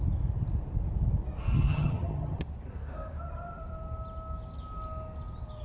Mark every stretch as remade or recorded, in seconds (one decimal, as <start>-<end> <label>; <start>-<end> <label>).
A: 0.0-1.7 recorded; 1.7-2.4 remade; 2.4-5.6 recorded